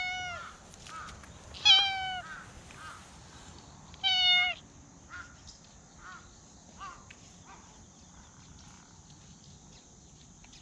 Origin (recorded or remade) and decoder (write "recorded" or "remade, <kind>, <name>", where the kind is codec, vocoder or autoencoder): recorded